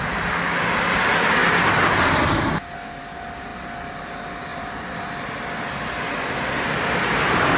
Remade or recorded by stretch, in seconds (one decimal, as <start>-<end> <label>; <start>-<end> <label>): 0.0-1.4 recorded; 1.4-2.4 remade; 2.4-4.5 recorded; 4.5-5.2 remade; 5.2-7.6 recorded